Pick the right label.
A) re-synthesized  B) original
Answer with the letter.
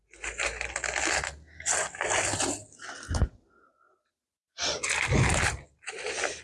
B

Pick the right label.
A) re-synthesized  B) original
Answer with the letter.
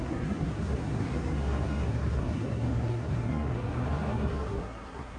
A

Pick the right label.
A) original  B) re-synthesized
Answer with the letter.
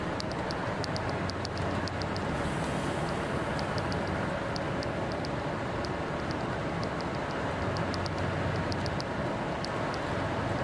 A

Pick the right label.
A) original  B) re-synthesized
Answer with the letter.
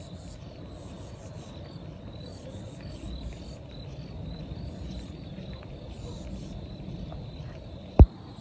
A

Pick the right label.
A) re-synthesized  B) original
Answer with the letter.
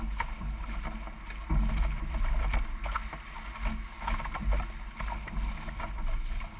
B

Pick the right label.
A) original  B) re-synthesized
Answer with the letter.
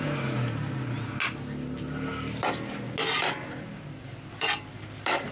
A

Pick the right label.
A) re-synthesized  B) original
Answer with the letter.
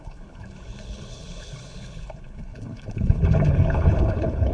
A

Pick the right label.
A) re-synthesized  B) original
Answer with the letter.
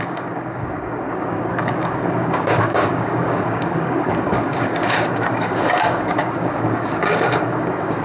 A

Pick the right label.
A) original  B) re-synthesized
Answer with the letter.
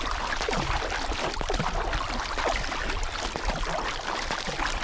A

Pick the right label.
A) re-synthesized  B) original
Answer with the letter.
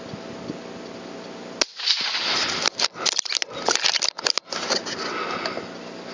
B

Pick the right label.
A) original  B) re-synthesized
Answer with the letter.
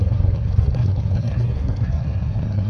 B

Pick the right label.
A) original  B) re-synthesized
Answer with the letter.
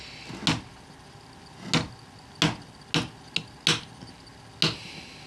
A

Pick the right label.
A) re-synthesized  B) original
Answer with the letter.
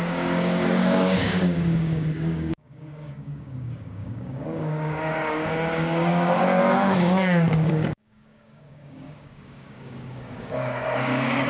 A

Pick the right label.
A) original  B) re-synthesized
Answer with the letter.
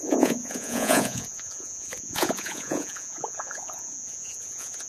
B